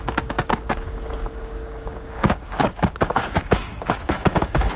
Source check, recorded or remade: remade